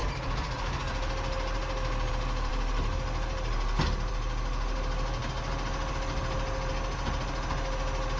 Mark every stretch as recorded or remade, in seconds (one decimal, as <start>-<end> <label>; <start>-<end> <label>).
0.0-8.2 recorded